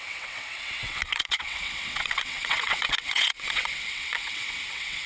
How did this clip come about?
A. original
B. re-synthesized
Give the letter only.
B